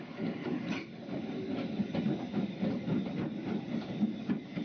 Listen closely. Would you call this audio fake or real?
real